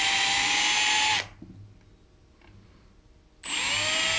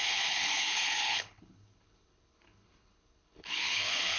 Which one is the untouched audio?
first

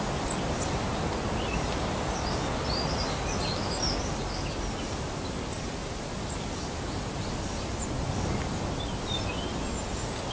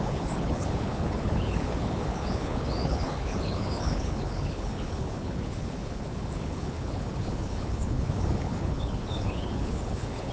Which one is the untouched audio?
first